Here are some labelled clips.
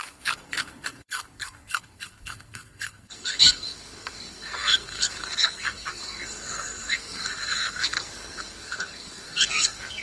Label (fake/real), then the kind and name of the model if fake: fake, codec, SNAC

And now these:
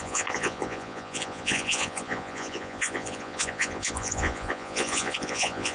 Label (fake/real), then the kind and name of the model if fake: fake, vocoder, Vocos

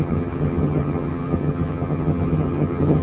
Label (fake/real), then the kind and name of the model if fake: fake, vocoder, HiFi-GAN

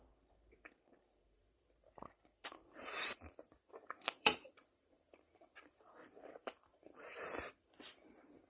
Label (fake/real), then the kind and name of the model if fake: fake, vocoder, BigVGAN v2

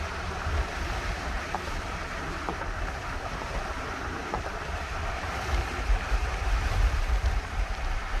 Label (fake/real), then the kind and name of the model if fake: fake, vocoder, BigVGAN v2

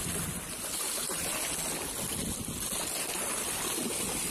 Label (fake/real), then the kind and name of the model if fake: real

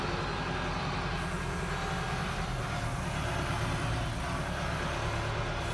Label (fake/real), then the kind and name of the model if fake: real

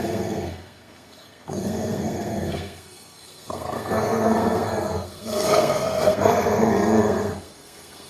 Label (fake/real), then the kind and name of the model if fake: fake, codec, SNAC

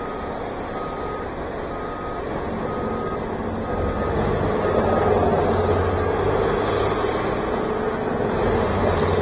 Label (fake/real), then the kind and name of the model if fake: real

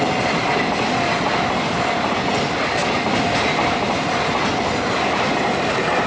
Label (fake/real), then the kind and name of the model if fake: real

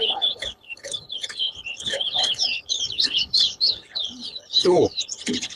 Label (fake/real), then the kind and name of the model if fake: fake, codec, HILCodec